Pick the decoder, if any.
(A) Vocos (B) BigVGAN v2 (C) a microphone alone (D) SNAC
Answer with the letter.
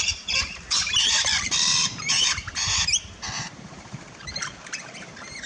B